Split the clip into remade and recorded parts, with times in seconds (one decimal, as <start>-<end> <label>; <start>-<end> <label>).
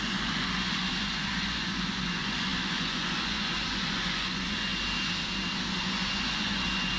0.0-4.7 remade; 4.7-5.7 recorded; 5.7-7.0 remade